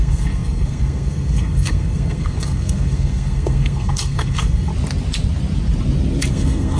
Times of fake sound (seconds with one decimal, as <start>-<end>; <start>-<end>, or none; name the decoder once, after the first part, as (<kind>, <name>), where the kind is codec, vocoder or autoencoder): 0.0-4.7 (codec, SNAC); 6.3-6.8